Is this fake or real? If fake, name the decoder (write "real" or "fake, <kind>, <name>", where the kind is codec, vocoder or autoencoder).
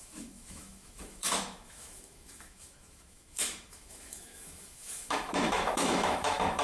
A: fake, autoencoder, DAC-VAE